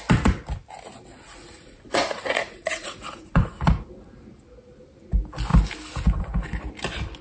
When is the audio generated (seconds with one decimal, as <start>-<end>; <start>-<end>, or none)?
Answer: 1.1-3.5

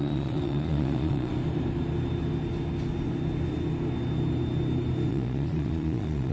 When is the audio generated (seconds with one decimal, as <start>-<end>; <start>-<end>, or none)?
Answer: 0.0-1.3; 5.1-6.3

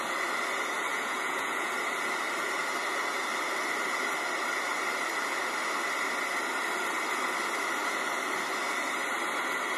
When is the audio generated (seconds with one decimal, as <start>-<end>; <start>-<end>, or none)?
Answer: 0.9-1.7

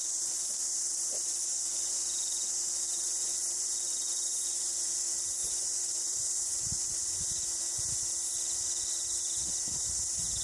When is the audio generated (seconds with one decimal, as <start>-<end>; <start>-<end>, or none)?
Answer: 1.5-5.0; 5.4-7.3

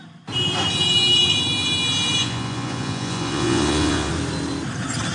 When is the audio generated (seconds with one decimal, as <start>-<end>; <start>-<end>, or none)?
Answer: 2.2-4.1

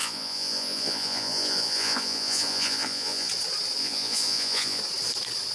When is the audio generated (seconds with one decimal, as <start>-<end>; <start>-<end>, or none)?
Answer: 0.0-3.3; 3.8-4.8